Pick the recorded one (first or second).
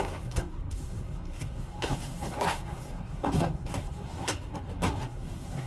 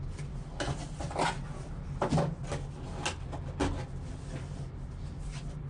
second